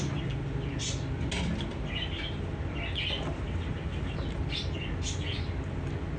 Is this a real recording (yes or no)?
yes